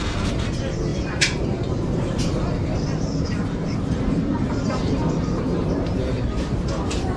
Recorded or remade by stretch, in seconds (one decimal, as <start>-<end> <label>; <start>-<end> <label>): 0.0-0.9 recorded; 0.9-4.9 remade; 4.9-7.2 recorded